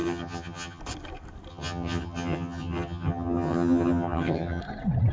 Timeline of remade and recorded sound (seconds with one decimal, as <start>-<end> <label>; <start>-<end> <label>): 0.0-0.8 remade; 0.8-1.5 recorded; 1.5-4.6 remade; 4.6-5.1 recorded